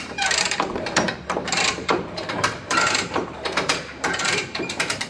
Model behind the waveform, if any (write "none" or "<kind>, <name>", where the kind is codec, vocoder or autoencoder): vocoder, BigVGAN v2